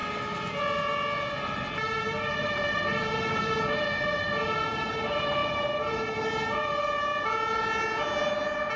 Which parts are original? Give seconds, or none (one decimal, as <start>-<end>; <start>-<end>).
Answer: 0.0-8.8